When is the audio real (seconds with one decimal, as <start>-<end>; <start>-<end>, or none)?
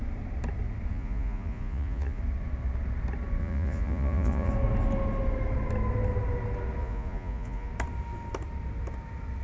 0.0-0.9; 2.2-3.4; 4.5-6.8; 7.7-9.4